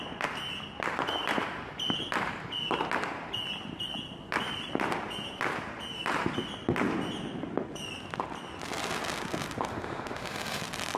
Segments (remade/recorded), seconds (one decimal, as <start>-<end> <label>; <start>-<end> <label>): 0.0-9.7 recorded; 9.7-10.6 remade; 10.6-11.0 recorded